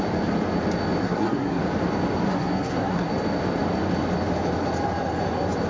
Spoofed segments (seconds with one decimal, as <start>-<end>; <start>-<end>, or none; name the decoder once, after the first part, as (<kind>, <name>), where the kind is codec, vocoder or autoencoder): 1.0-1.6 (codec, SNAC); 2.3-3.1